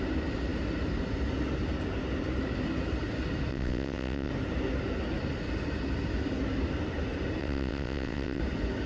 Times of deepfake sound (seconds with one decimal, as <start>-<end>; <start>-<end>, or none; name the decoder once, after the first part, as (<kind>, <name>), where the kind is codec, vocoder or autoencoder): 3.5-4.3 (vocoder, WaveNeXt); 7.4-8.4